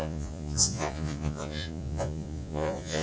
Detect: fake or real fake